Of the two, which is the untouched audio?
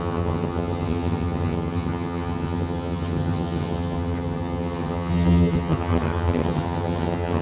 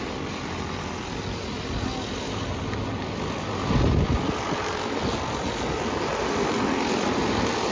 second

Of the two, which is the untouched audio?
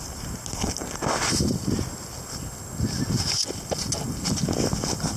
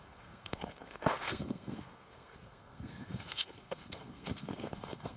first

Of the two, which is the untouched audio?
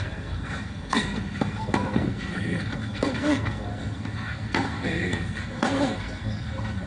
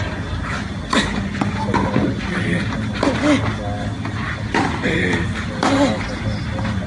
second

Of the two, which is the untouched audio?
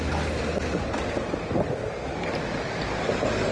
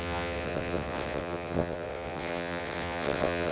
first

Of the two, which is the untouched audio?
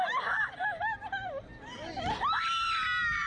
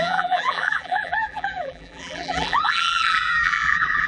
first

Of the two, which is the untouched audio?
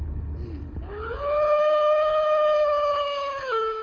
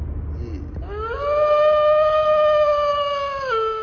second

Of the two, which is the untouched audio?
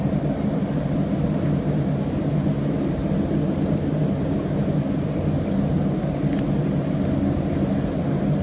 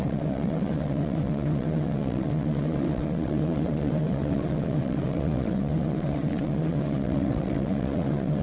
first